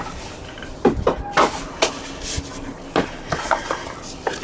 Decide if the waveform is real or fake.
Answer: real